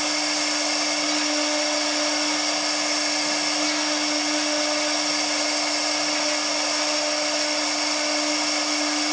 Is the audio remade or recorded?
recorded